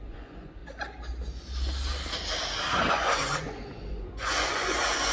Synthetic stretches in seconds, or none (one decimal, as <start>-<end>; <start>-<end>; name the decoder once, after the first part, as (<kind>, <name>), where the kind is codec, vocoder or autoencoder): 0.0-0.6 (vocoder, Vocos); 2.9-5.1